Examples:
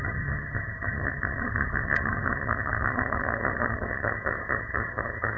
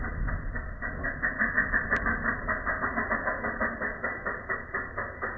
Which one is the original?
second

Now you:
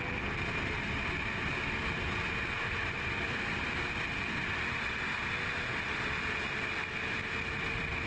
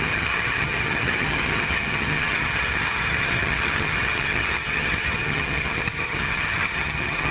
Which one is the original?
first